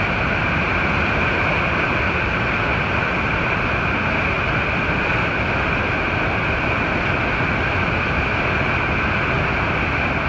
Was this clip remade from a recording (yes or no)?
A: no